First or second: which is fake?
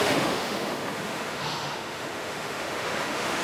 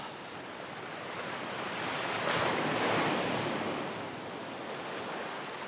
first